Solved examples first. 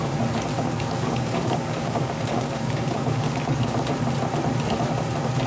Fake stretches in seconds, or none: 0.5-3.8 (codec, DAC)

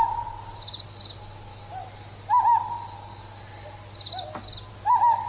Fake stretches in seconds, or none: none

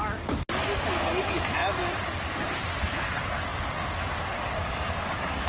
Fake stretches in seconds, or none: 4.6-5.5 (codec, DAC)

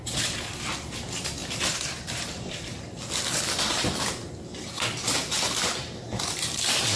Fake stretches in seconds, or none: none